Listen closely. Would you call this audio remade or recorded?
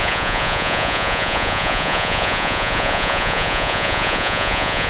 remade